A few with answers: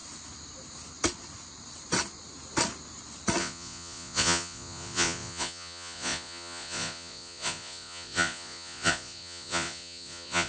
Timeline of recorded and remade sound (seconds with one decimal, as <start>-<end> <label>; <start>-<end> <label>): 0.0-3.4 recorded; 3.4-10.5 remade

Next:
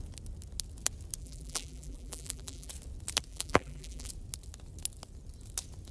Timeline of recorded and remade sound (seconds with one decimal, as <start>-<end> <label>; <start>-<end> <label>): 0.0-1.2 recorded; 1.2-2.7 remade; 2.7-3.3 recorded; 3.3-4.1 remade; 4.1-5.9 recorded

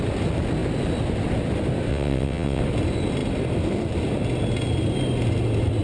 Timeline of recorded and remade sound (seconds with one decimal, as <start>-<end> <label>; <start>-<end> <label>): 0.0-1.9 recorded; 1.9-2.6 remade; 2.6-5.8 recorded

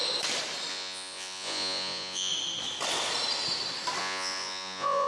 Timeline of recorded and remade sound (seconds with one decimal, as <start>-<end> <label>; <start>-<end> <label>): 0.0-0.7 recorded; 0.7-2.3 remade; 2.3-4.0 recorded; 4.0-5.1 remade